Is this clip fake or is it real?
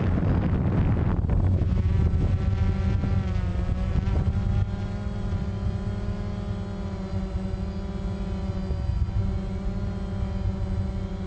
real